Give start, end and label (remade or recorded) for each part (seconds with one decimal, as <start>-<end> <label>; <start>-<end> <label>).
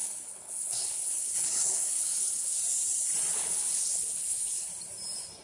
0.0-2.6 remade; 2.6-3.3 recorded; 3.3-4.7 remade; 4.7-5.4 recorded